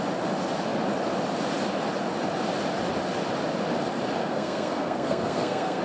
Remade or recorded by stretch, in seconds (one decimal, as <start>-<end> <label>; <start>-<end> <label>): 0.0-4.2 recorded; 4.2-5.8 remade